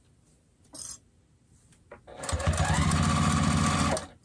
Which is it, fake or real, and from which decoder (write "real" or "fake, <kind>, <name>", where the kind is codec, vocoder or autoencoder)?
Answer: real